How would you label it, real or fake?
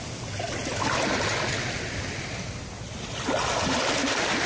real